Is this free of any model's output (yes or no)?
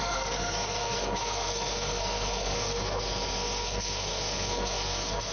no